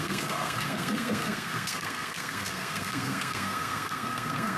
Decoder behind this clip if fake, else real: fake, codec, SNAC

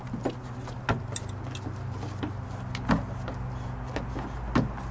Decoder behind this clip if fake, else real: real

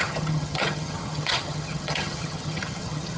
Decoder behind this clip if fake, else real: fake, vocoder, HiFi-GAN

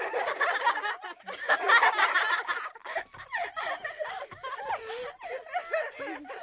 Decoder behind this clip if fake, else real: real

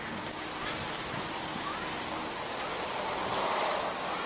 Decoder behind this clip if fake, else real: real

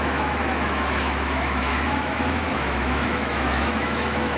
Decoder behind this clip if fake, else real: fake, autoencoder, DAC-VAE